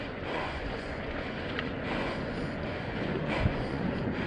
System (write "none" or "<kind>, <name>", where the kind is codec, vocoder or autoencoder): vocoder, Vocos